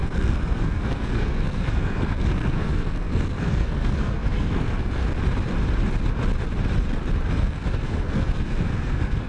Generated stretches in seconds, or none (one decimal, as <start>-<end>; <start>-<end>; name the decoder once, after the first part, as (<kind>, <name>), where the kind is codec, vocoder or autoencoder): 0.0-5.0 (codec, SNAC); 7.3-9.3

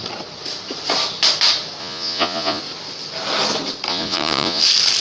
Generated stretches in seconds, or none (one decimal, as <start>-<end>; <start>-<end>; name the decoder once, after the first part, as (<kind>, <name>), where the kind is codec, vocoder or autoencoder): 1.8-2.6 (vocoder, Vocos); 3.9-4.6

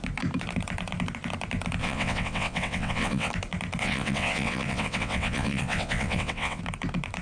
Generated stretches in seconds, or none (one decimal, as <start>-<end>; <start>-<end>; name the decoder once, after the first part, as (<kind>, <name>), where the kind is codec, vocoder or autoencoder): 1.8-3.3 (vocoder, WaveNeXt); 3.8-6.6

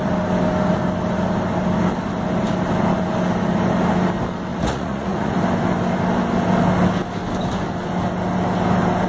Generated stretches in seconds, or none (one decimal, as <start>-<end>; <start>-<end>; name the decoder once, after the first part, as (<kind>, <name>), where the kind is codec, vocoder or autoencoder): 4.5-5.3 (vocoder, Vocos)

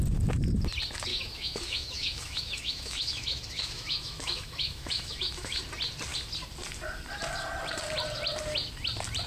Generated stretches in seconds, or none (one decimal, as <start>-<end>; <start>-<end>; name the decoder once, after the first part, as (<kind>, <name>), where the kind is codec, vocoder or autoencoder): 1.1-5.6 (autoencoder, DAC-VAE)